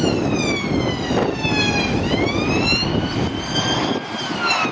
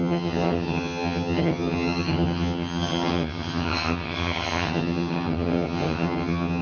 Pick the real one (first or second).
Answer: first